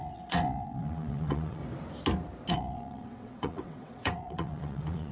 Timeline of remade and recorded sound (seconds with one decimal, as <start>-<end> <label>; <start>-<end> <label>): 0.0-1.6 remade; 1.6-2.5 recorded; 2.5-5.1 remade